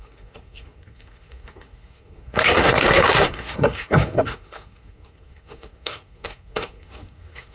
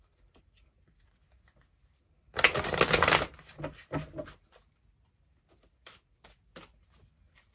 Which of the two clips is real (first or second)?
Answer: second